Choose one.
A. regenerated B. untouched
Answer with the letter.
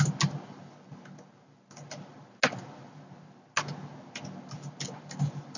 B